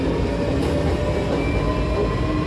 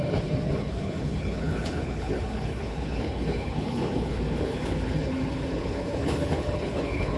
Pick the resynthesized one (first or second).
second